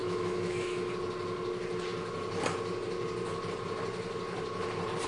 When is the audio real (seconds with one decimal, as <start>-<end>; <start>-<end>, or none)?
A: 0.9-5.1